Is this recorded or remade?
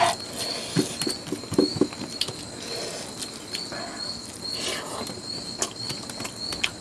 recorded